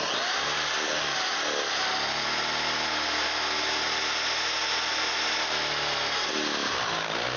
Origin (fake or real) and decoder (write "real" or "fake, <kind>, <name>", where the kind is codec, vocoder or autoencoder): real